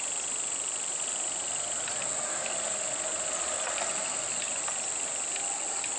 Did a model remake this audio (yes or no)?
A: no